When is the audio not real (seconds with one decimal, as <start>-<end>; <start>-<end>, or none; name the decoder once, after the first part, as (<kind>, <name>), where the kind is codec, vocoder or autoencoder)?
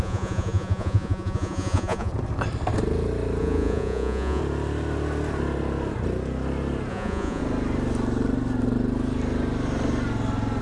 0.0-2.1 (vocoder, Vocos); 3.4-4.4; 6.9-7.4